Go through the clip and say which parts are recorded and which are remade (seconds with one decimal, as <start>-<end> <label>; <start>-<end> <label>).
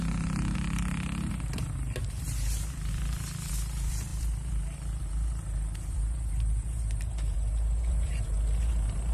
0.0-9.1 remade